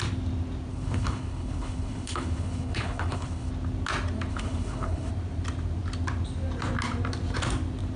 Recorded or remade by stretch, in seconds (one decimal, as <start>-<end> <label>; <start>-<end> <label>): 0.0-0.7 recorded; 0.7-3.5 remade; 3.5-4.3 recorded; 4.3-5.1 remade; 5.1-8.0 recorded